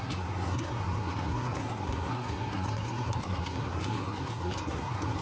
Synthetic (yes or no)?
yes